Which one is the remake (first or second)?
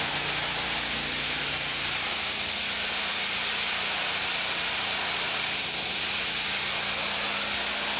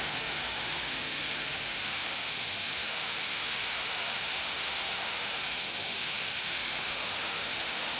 second